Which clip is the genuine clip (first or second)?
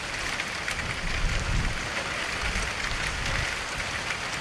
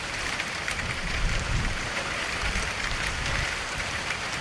first